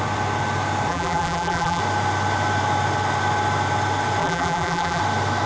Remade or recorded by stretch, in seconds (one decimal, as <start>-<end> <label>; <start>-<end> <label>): 0.0-0.9 recorded; 0.9-1.8 remade; 1.8-4.2 recorded; 4.2-5.0 remade; 5.0-5.5 recorded

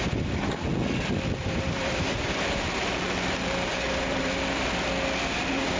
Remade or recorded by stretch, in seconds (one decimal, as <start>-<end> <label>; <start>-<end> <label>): 0.0-1.4 recorded; 1.4-4.9 remade; 4.9-5.8 recorded

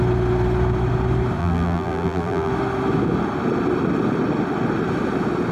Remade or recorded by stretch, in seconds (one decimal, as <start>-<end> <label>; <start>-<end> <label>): 0.0-1.4 recorded; 1.4-2.5 remade; 2.5-5.5 recorded

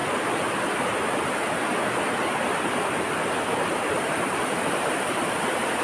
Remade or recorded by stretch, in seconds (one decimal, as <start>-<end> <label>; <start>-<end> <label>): 0.0-3.5 recorded; 3.5-5.8 remade

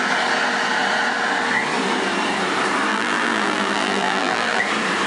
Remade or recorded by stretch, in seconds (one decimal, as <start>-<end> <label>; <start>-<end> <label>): 0.0-2.9 recorded; 2.9-4.6 remade; 4.6-5.1 recorded